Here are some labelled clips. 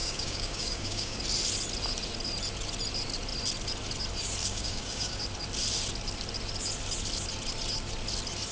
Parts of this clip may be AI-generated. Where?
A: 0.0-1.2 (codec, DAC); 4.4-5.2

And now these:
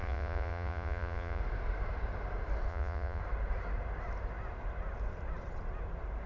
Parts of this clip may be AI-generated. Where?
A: 0.0-1.4 (vocoder, Vocos); 2.7-3.2

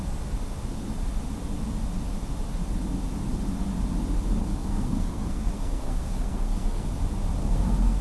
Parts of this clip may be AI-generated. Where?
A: 4.4-6.9 (codec, SNAC); 7.4-8.0

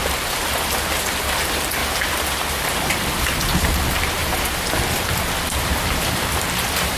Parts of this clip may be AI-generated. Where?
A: 0.0-1.8 (vocoder, BigVGAN v2); 2.4-4.2; 5.8-7.0

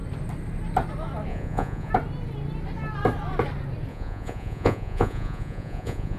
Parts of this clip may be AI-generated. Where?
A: 1.3-1.9 (vocoder, Vocos); 3.9-6.2

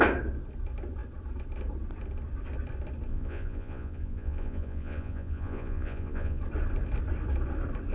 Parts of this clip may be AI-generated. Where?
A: 3.1-6.4 (vocoder, Vocos)